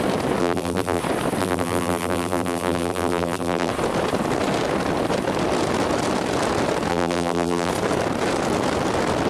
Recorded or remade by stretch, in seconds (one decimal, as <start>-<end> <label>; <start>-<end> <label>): 0.0-0.4 recorded; 0.4-1.0 remade; 1.0-1.4 recorded; 1.4-3.7 remade; 3.7-6.9 recorded; 6.9-7.7 remade; 7.7-9.3 recorded